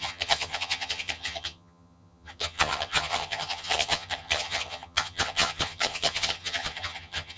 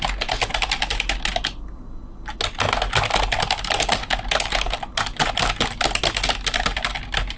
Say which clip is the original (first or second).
second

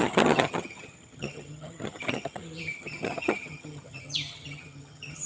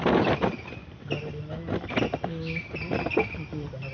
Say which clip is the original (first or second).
second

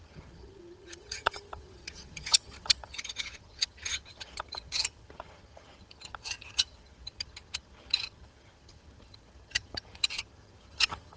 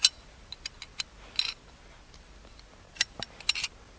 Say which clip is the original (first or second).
second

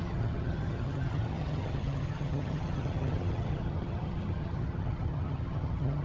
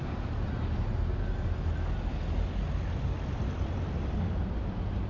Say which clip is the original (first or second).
second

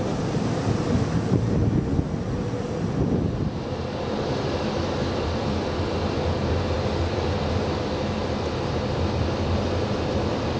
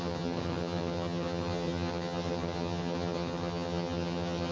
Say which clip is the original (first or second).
first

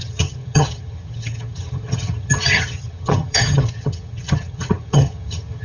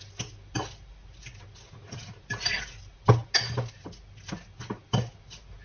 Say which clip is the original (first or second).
second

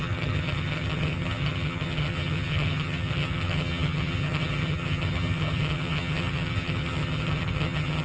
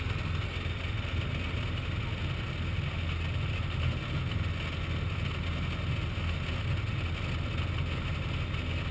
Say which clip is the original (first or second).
second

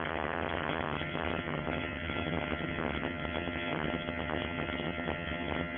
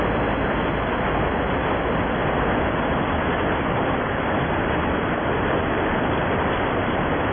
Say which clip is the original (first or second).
second